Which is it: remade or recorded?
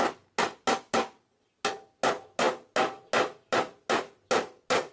recorded